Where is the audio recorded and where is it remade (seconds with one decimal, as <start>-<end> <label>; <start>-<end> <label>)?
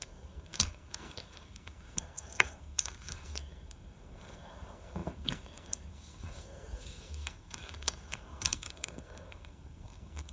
0.0-10.3 remade